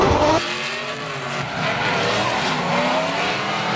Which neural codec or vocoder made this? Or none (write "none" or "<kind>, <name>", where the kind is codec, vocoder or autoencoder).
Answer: none